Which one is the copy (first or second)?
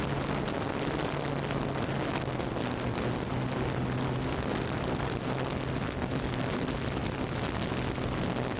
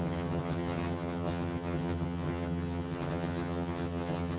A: second